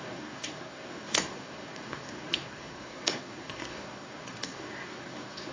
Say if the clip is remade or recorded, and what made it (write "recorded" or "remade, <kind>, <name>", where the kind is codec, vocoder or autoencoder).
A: remade, codec, SNAC